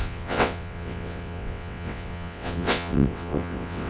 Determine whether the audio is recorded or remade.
remade